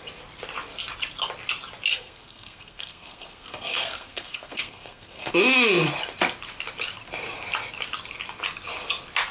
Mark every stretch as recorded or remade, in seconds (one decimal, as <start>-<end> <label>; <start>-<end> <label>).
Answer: 0.0-1.9 recorded; 1.9-5.3 remade; 5.3-9.3 recorded